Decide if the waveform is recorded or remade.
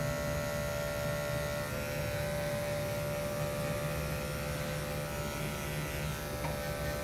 recorded